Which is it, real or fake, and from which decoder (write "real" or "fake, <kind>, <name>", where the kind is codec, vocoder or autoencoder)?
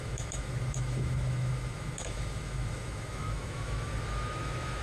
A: fake, autoencoder, DAC-VAE